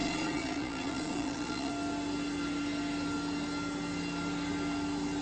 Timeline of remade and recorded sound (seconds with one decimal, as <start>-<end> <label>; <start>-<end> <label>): 0.0-1.7 remade; 1.7-5.2 recorded